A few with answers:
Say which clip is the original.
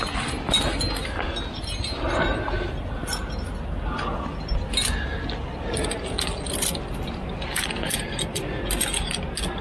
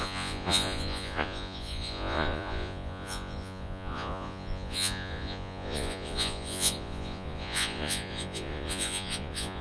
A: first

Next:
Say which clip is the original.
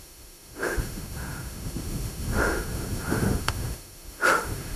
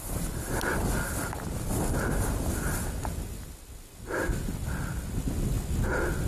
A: second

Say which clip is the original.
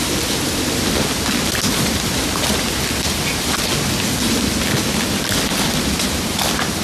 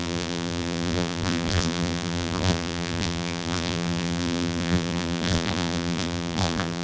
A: first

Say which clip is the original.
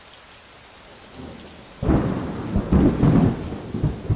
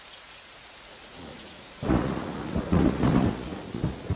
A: first